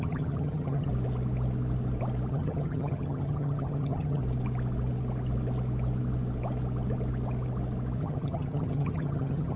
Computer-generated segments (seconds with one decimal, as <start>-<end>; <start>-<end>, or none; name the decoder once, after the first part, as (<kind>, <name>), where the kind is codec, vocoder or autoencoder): 0.0-0.9 (vocoder, HiFi-GAN); 2.3-4.2; 8.0-9.6